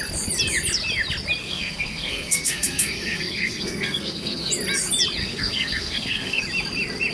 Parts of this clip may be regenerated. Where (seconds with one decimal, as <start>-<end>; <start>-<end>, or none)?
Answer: 1.4-4.5; 5.2-6.4